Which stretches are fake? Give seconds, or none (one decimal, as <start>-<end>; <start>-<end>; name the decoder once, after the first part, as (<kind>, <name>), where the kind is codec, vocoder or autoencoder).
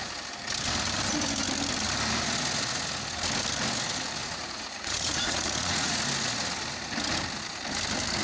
4.2-6.0 (vocoder, Vocos)